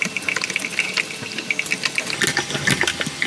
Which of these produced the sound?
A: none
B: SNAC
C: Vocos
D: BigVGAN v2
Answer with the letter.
A